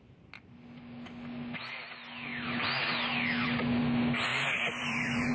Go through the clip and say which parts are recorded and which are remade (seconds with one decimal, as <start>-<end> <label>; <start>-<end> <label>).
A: 0.0-4.3 recorded; 4.3-5.3 remade

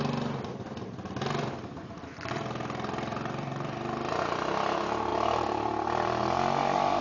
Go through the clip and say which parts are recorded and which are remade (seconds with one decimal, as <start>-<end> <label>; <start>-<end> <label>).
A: 0.0-0.5 recorded; 0.5-4.2 remade; 4.2-5.1 recorded; 5.1-6.2 remade; 6.2-7.0 recorded

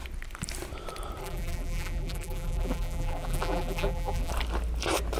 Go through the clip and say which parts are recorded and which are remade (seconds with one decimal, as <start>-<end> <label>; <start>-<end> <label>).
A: 0.0-1.2 recorded; 1.2-4.3 remade; 4.3-5.2 recorded

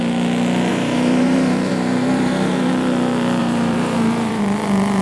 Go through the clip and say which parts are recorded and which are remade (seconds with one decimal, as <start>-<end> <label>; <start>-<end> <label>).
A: 0.0-0.7 recorded; 0.7-2.7 remade; 2.7-3.4 recorded; 3.4-4.4 remade; 4.4-5.0 recorded

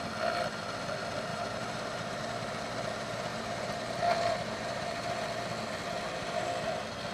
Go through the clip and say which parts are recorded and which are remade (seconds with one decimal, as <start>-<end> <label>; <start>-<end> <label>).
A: 0.0-1.3 recorded; 1.3-2.0 remade; 2.0-3.3 recorded; 3.3-4.9 remade; 4.9-7.1 recorded

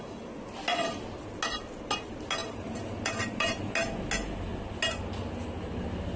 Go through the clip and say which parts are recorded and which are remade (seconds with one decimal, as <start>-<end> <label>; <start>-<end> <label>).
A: 0.0-2.4 recorded; 2.4-3.7 remade; 3.7-6.2 recorded

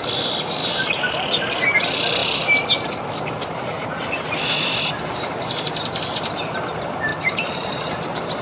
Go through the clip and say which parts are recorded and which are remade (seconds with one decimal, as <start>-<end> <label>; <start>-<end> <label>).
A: 0.0-0.6 recorded; 0.6-1.4 remade; 1.4-7.1 recorded; 7.1-7.8 remade; 7.8-8.4 recorded

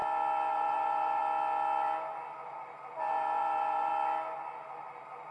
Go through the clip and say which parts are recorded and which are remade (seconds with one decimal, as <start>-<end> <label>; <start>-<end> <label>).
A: 0.0-0.5 recorded; 0.5-1.2 remade; 1.2-2.4 recorded; 2.4-3.9 remade; 3.9-4.8 recorded; 4.8-5.3 remade